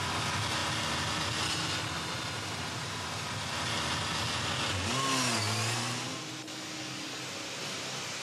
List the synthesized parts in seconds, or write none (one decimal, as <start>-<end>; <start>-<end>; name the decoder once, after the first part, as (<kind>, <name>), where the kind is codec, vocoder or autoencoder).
6.5-7.2 (codec, DAC)